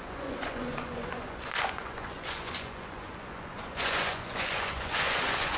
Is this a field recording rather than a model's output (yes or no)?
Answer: no